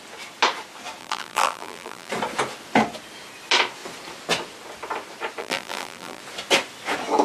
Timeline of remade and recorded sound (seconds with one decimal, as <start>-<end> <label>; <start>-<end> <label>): 0.0-1.0 recorded; 1.0-2.1 remade; 2.1-5.4 recorded; 5.4-6.2 remade; 6.2-7.2 recorded

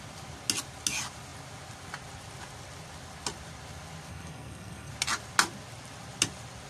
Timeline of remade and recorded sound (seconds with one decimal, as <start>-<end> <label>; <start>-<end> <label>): 0.0-4.1 recorded; 4.1-4.9 remade; 4.9-6.7 recorded

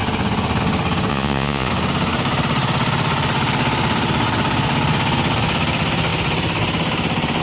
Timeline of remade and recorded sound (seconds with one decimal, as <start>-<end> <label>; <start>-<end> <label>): 0.0-1.1 recorded; 1.1-1.7 remade; 1.7-7.4 recorded